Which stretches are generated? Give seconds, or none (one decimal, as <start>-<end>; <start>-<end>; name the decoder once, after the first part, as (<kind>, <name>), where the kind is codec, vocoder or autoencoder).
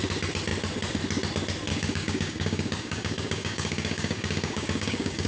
1.7-5.3 (codec, DAC)